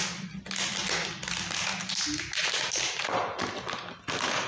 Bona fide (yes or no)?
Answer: yes